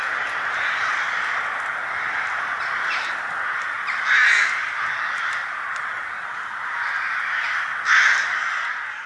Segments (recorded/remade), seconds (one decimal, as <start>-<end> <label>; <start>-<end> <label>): 0.0-9.1 recorded